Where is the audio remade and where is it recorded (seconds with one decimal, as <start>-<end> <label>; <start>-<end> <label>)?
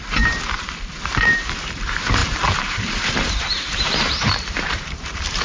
0.0-5.4 remade